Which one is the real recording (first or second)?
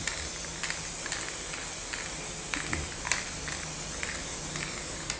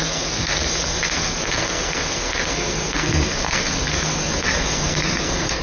first